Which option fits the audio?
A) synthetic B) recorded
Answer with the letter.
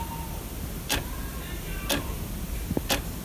B